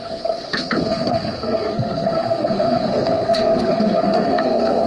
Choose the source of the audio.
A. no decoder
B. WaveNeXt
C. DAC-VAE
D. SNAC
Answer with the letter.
D